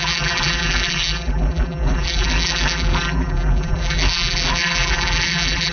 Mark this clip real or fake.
fake